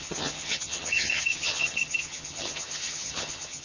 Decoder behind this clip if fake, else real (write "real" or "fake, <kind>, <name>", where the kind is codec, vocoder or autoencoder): fake, vocoder, HiFi-GAN